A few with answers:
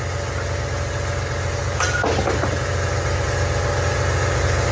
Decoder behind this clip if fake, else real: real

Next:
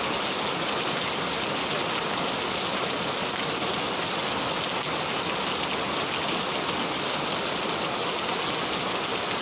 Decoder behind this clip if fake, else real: real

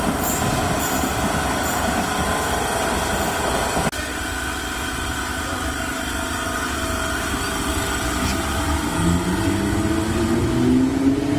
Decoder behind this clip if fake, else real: real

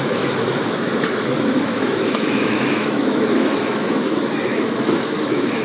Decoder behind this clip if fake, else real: fake, autoencoder, DAC-VAE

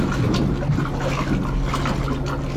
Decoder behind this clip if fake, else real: real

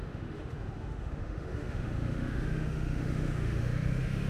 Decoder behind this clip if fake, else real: fake, autoencoder, DAC-VAE